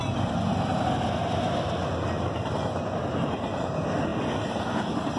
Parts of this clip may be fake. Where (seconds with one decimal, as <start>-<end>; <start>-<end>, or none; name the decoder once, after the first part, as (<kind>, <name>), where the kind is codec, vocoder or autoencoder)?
none